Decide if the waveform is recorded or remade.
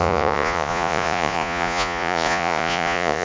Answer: remade